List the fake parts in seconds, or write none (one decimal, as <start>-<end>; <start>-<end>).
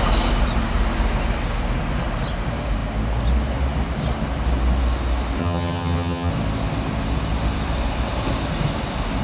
5.4-6.3